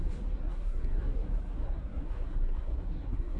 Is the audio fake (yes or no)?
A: yes